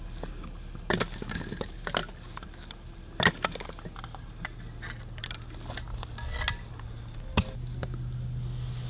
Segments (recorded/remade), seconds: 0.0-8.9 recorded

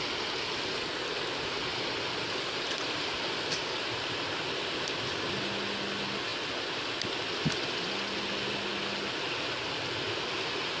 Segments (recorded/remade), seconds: 0.0-10.8 recorded

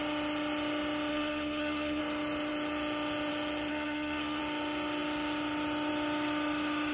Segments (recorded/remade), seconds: 0.0-1.1 recorded; 1.1-2.0 remade; 2.0-3.7 recorded; 3.7-4.4 remade; 4.4-6.9 recorded

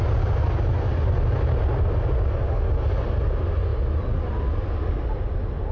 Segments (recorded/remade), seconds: 0.0-5.7 recorded

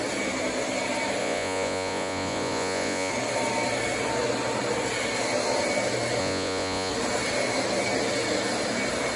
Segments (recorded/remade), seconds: 0.0-1.2 recorded; 1.2-3.1 remade; 3.1-6.2 recorded; 6.2-6.9 remade; 6.9-9.2 recorded